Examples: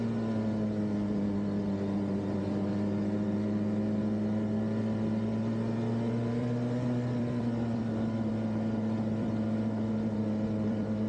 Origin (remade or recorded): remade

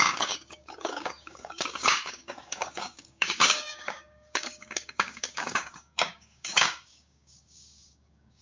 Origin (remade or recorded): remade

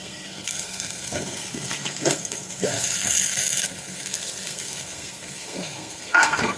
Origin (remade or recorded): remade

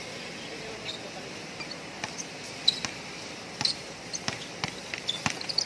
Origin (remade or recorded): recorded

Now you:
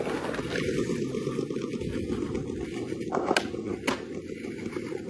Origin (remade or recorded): recorded